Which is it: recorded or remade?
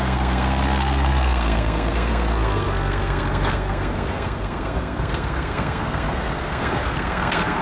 remade